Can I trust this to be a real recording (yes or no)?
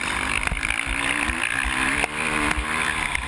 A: yes